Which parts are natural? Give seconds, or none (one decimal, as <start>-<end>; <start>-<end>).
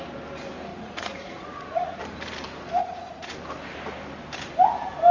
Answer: 0.0-0.7; 2.0-2.8; 3.3-5.1